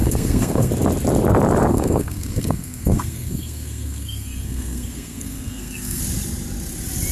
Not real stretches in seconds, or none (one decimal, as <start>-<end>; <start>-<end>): 0.0-0.7; 1.7-6.0